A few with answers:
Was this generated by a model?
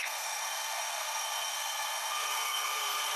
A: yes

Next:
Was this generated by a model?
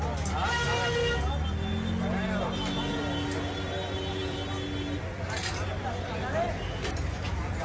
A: no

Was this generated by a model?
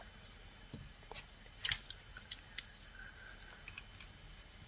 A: no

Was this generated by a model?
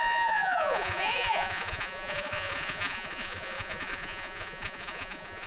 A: yes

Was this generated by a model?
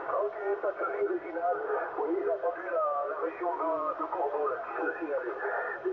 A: no